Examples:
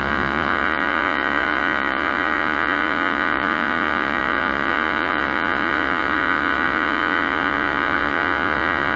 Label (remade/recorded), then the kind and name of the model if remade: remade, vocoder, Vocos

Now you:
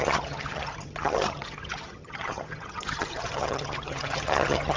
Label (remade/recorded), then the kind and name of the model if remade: remade, vocoder, HiFi-GAN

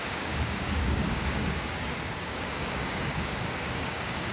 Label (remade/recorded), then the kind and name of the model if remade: remade, codec, DAC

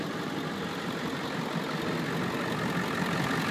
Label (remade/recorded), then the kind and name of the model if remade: recorded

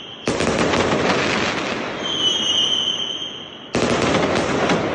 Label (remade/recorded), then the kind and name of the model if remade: recorded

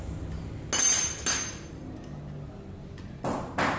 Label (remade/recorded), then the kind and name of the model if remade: recorded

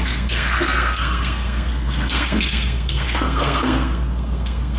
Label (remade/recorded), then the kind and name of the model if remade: remade, codec, SNAC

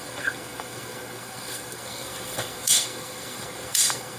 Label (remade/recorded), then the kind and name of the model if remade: remade, codec, SNAC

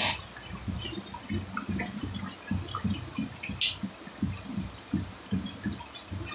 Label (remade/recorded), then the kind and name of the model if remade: recorded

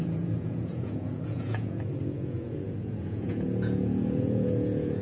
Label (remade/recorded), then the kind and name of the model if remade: remade, vocoder, Vocos